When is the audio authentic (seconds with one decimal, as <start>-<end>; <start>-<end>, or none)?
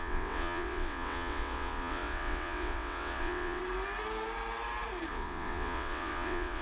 3.6-5.1